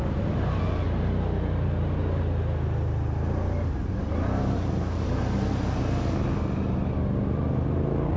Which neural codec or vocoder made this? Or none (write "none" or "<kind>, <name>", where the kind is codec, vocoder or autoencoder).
none